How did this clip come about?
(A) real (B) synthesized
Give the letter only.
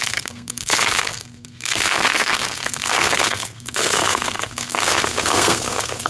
B